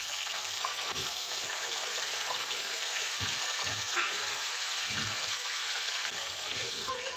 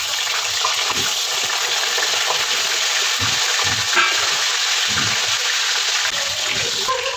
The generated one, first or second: first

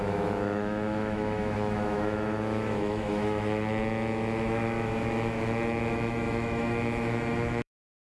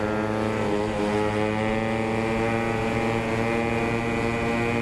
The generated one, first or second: first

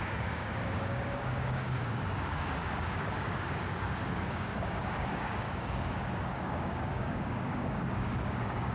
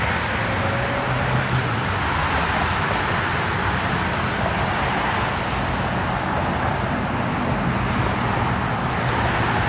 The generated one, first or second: first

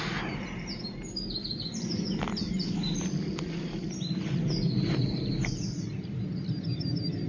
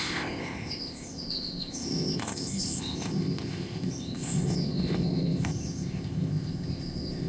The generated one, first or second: second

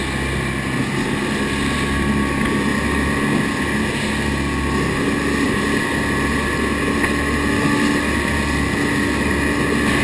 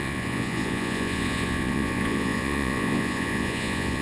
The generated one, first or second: second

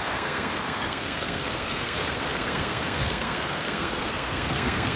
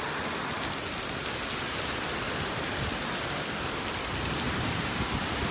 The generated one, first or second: first